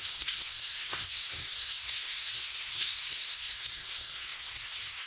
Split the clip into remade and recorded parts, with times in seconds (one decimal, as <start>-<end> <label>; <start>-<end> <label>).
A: 0.0-5.1 remade